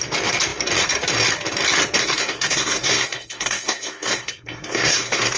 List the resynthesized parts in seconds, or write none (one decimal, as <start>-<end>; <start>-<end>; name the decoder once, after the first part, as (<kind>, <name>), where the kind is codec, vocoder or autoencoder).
2.0-5.4 (codec, SNAC)